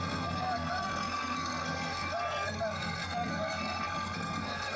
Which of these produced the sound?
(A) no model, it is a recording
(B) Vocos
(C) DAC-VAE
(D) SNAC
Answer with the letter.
D